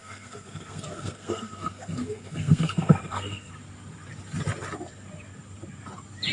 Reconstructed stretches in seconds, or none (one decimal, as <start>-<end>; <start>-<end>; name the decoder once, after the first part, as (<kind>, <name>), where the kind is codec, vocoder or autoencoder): 0.0-3.5 (codec, SNAC)